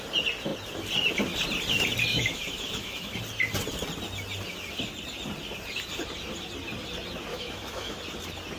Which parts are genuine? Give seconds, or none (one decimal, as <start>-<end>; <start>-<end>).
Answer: 0.0-2.1; 3.2-7.3; 8.0-8.6